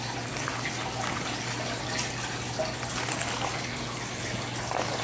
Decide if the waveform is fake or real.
real